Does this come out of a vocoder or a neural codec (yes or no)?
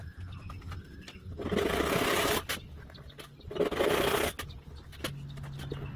no